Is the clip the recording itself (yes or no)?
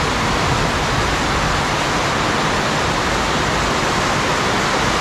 yes